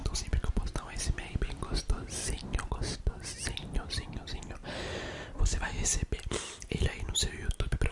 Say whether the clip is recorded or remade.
recorded